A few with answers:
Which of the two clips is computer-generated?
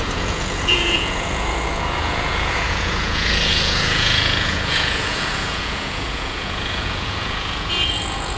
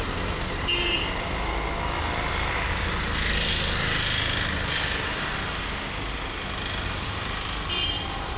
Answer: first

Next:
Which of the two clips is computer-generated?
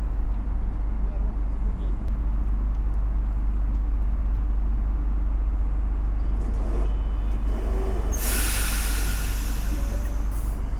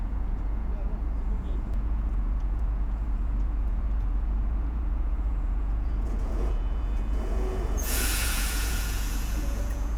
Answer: second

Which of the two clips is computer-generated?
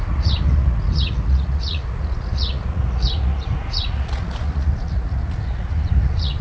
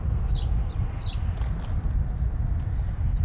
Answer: first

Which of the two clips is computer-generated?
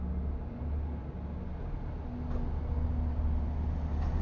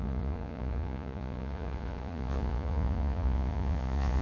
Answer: second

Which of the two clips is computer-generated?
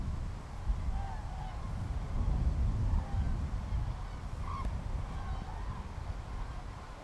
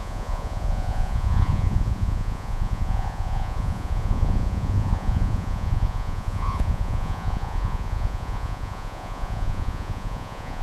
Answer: second